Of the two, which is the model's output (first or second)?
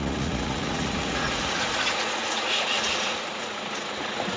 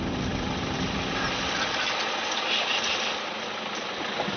first